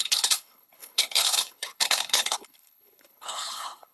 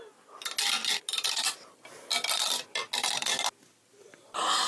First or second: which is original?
second